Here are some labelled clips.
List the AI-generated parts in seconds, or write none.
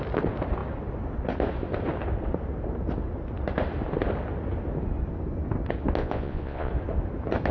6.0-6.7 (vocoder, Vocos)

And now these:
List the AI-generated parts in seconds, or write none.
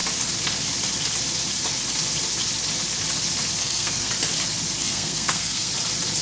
3.6-4.1 (codec, SNAC); 4.8-5.7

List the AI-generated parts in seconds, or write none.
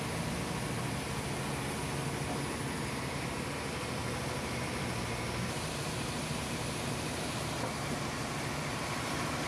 none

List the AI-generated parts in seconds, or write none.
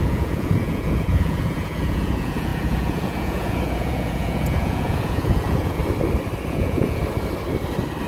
0.0-5.8 (vocoder, Vocos); 6.5-7.0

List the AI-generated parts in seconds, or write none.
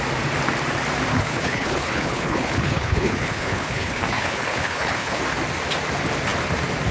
1.1-5.2 (codec, HILCodec)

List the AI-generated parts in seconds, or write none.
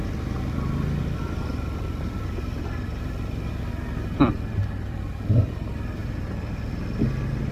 0.0-7.5 (vocoder, BigVGAN v2)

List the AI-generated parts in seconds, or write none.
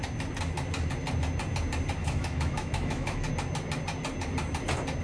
2.0-3.3 (autoencoder, DAC-VAE)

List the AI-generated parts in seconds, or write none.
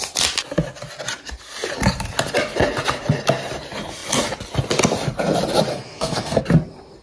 5.7-6.4 (codec, SNAC)